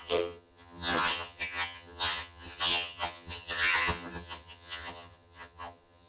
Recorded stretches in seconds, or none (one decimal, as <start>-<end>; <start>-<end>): none